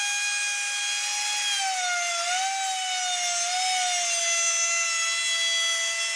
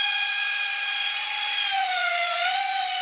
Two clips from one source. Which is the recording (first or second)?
first